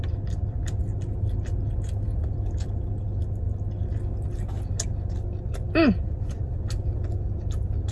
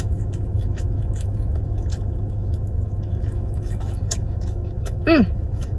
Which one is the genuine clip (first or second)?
first